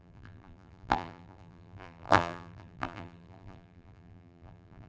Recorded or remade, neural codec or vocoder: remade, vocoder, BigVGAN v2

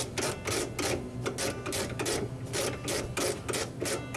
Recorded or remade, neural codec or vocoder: recorded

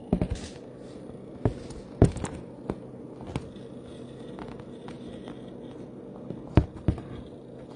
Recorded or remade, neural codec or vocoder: recorded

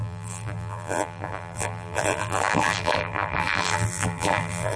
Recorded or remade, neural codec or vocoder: remade, vocoder, BigVGAN v2